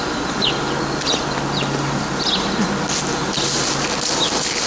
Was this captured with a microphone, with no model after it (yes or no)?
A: yes